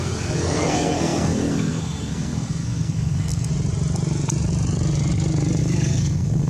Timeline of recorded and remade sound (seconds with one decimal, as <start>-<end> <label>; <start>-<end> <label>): 0.0-3.5 remade; 3.5-5.6 recorded; 5.6-6.5 remade